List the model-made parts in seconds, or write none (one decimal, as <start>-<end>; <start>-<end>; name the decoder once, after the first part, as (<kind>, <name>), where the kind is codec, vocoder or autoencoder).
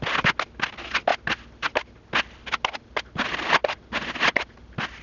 none